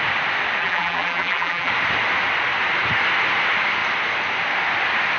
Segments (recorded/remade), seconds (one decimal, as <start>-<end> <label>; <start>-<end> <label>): 0.0-0.6 recorded; 0.6-1.7 remade; 1.7-5.2 recorded